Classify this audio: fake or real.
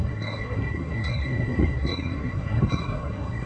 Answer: fake